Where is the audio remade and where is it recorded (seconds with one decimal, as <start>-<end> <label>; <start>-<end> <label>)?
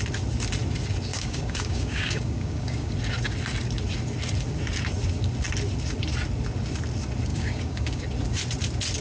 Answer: 0.0-1.1 recorded; 1.1-2.9 remade; 2.9-7.3 recorded; 7.3-8.0 remade; 8.0-9.0 recorded